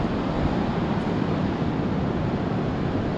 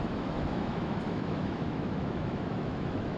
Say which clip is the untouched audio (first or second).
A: first